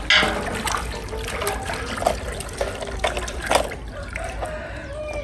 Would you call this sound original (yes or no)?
yes